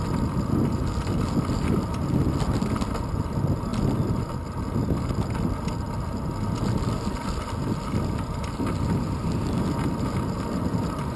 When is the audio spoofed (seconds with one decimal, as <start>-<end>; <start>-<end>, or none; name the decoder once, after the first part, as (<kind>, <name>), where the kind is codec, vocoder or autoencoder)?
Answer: none